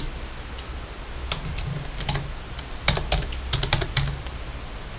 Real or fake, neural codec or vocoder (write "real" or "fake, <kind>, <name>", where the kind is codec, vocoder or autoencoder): real